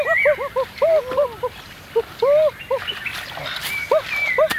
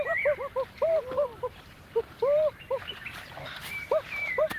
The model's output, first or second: second